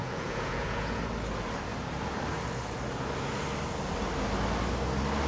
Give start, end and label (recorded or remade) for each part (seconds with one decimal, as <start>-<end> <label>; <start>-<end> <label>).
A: 0.0-1.0 remade; 1.0-5.3 recorded